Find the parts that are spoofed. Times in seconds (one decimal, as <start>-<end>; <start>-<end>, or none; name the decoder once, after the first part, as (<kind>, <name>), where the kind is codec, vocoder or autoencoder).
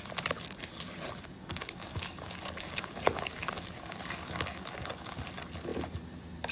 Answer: 1.4-5.3 (codec, DAC)